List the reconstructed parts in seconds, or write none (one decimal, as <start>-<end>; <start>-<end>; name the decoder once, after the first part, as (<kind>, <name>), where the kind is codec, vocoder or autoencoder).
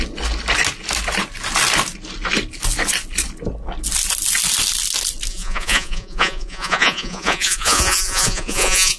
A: 5.3-9.0 (vocoder, Vocos)